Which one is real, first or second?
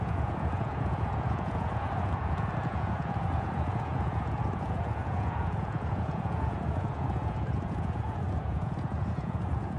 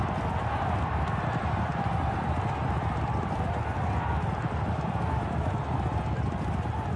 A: second